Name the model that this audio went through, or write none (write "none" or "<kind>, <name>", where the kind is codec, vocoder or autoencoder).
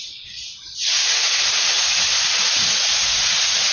vocoder, Vocos